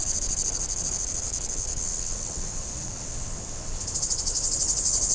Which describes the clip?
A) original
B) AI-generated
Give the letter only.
B